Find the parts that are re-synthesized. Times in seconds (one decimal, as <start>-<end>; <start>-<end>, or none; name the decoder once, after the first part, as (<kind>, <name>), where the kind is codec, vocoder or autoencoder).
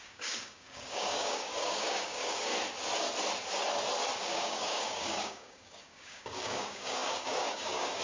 0.0-2.5 (codec, DAC); 4.2-8.0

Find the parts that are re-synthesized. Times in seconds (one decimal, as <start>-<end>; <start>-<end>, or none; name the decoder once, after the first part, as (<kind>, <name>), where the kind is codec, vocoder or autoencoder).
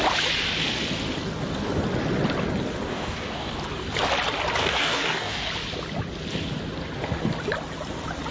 2.9-3.5 (codec, DAC); 4.6-5.5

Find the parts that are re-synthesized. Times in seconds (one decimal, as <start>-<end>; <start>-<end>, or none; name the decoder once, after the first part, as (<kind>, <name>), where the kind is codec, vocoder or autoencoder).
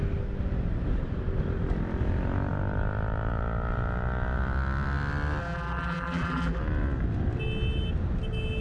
5.4-6.6 (vocoder, BigVGAN v2)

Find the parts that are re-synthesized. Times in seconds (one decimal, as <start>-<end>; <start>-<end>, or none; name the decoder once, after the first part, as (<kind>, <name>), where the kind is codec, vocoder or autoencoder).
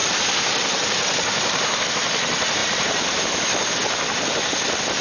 2.6-3.7 (vocoder, BigVGAN v2)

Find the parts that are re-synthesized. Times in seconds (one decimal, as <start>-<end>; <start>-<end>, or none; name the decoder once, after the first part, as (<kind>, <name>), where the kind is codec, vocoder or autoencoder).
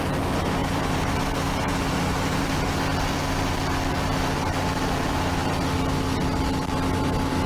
0.6-2.4 (vocoder, BigVGAN v2)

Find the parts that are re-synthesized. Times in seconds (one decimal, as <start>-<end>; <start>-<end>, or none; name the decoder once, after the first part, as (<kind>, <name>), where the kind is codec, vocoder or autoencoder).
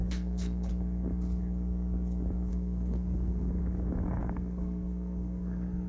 0.0-0.7 (codec, SNAC); 2.5-3.6; 4.2-5.9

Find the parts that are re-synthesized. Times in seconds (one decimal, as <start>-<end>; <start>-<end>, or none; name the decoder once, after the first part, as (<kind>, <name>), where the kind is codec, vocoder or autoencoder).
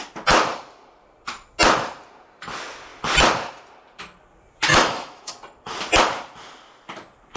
4.7-5.3 (autoencoder, DAC-VAE)